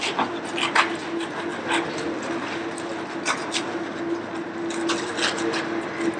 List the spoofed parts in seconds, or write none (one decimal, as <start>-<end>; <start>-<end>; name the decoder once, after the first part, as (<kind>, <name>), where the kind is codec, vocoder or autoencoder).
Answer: none